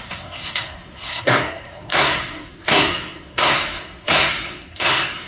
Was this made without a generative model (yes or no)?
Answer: no